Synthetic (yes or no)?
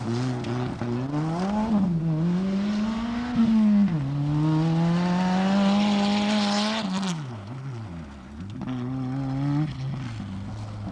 no